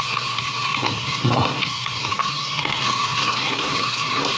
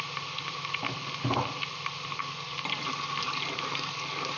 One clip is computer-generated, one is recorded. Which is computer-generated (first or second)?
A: first